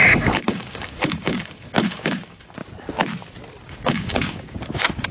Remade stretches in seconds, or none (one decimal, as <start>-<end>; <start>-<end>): 0.0-2.6; 3.6-5.1